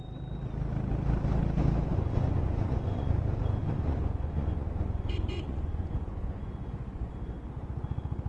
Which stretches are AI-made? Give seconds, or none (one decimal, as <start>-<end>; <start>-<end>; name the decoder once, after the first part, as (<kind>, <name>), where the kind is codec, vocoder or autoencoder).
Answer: 1.9-3.2 (vocoder, Vocos); 3.6-7.1